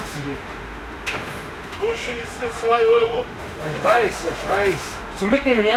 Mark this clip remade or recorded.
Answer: remade